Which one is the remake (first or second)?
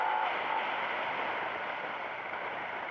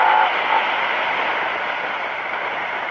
first